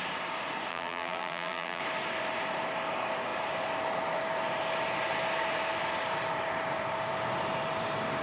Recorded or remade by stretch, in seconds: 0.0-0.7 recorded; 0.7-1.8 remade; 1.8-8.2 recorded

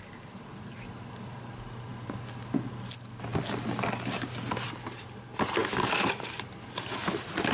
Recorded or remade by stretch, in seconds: 0.0-7.5 recorded

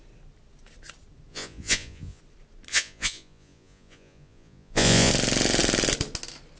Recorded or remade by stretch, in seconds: 0.0-1.3 recorded; 1.3-2.2 remade; 2.2-2.7 recorded; 2.7-5.1 remade; 5.1-6.6 recorded